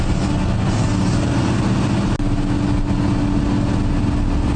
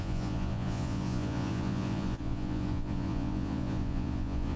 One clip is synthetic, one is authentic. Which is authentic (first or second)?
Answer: first